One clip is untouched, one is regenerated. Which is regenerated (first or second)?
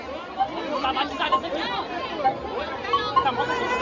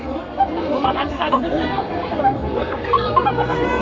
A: second